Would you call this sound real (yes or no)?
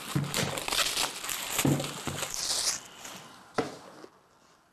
yes